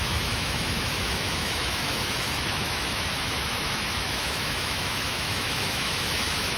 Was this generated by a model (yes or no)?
yes